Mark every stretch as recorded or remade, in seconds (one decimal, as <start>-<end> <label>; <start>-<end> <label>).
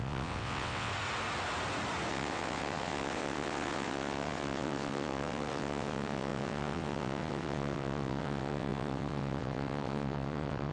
0.0-0.9 remade; 0.9-2.1 recorded; 2.1-10.7 remade